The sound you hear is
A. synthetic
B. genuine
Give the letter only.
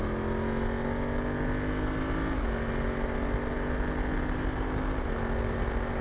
B